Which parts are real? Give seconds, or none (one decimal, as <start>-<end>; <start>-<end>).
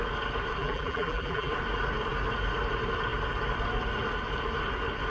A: 0.0-0.6; 1.5-5.1